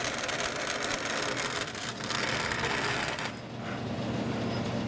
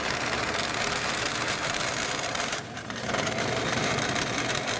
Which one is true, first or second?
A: first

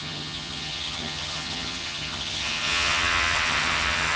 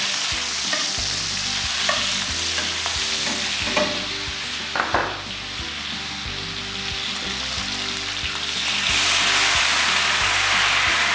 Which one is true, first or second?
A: second